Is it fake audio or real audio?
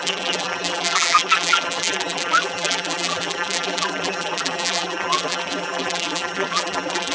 fake